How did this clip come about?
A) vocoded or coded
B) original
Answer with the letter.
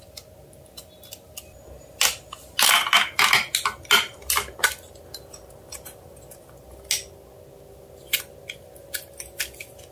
B